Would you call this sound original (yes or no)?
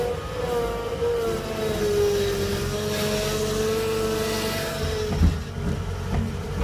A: yes